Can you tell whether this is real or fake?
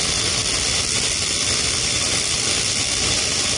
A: real